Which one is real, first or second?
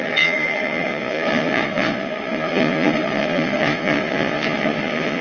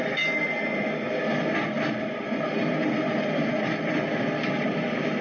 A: second